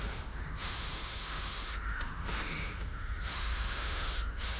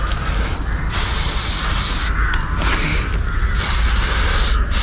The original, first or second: second